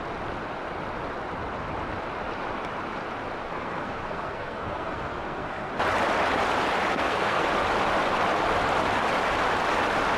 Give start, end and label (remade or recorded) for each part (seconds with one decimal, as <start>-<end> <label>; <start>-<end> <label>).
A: 0.0-3.4 recorded; 3.4-5.7 remade; 5.7-6.9 recorded; 6.9-7.5 remade; 7.5-10.2 recorded